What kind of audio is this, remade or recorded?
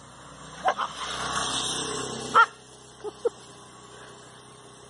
recorded